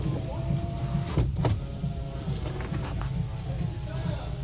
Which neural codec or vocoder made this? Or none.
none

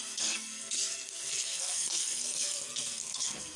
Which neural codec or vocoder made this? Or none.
codec, SNAC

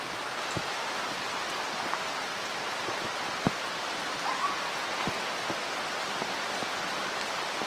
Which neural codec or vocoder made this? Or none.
none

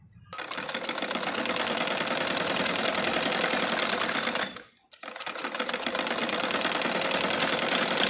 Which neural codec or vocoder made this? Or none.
vocoder, BigVGAN v2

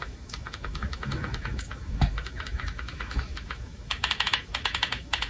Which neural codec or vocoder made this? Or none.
autoencoder, DAC-VAE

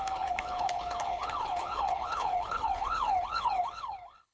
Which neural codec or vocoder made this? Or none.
codec, HILCodec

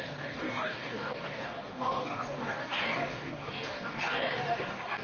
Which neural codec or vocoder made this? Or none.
codec, DAC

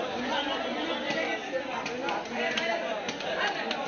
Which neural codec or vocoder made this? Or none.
none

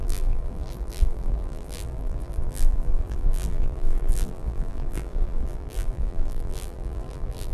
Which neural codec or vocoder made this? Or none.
vocoder, BigVGAN v2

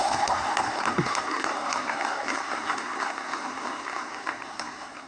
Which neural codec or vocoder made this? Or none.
codec, SNAC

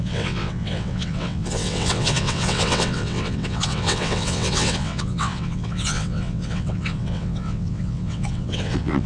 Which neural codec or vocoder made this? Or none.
vocoder, WaveNeXt